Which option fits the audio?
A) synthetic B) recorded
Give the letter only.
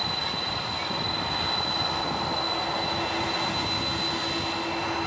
B